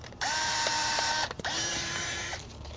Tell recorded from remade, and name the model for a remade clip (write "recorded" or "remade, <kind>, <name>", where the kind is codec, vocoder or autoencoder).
remade, vocoder, BigVGAN v2